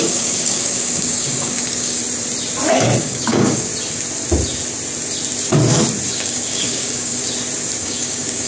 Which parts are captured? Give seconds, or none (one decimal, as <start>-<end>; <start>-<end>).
2.0-3.0; 3.7-6.1; 7.2-7.8